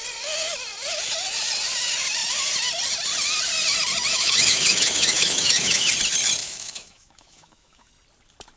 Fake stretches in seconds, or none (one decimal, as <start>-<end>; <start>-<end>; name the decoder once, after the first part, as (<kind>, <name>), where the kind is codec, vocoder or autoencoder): 4.1-5.9 (autoencoder, DAC-VAE); 6.4-7.9